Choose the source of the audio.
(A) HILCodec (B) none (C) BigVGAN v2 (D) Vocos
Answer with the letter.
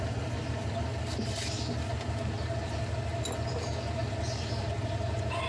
B